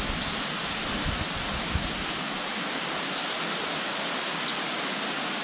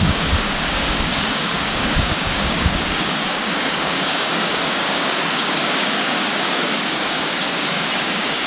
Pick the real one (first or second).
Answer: first